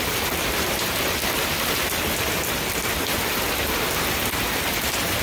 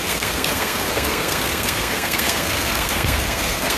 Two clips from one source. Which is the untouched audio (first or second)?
first